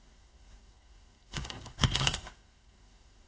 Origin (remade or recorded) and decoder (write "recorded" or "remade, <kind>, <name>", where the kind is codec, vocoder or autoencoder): remade, codec, SNAC